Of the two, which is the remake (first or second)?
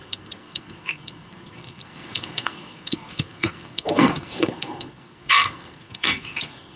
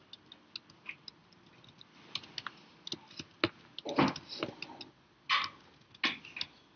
first